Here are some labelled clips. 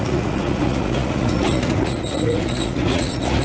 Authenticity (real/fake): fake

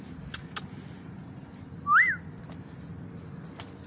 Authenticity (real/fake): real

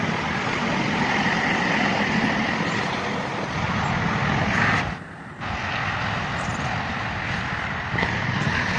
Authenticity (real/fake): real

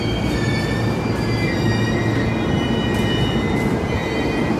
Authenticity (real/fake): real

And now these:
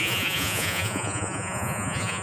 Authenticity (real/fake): fake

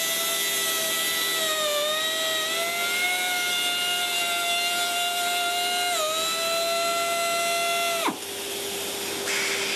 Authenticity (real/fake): real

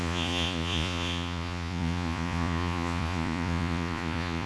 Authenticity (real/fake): fake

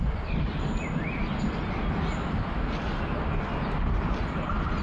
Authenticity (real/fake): real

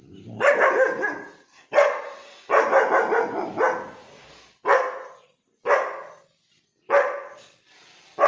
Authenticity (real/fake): real